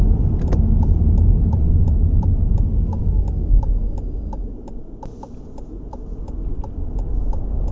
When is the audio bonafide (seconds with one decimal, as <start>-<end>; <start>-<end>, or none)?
0.0-7.7